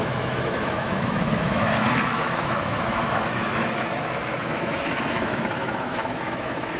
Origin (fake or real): fake